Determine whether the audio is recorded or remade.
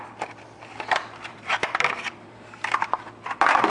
remade